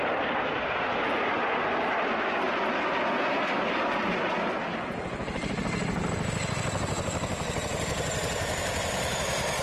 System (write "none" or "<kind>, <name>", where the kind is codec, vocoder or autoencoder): none